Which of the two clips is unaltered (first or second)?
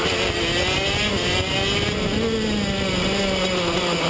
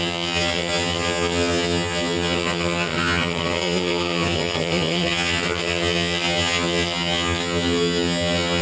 first